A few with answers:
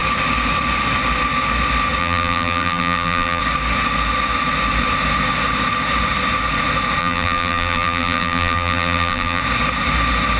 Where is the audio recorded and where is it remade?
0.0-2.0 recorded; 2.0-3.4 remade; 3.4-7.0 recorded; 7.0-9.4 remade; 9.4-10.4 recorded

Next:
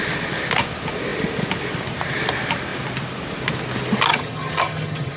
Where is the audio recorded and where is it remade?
0.0-4.1 recorded; 4.1-5.2 remade

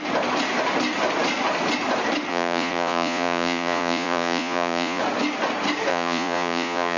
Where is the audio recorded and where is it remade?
0.0-2.3 recorded; 2.3-5.0 remade; 5.0-5.9 recorded; 5.9-7.0 remade

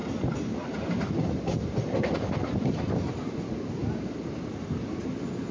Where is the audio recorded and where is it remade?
0.0-5.5 recorded

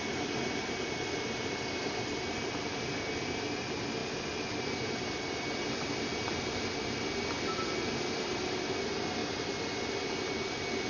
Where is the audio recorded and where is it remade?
0.0-10.9 recorded